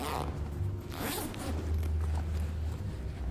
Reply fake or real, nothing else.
real